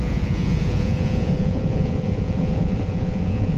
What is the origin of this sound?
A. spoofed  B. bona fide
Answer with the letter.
A